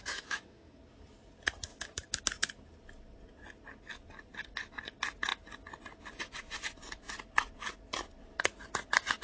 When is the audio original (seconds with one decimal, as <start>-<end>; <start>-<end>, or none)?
0.8-1.7; 2.2-9.2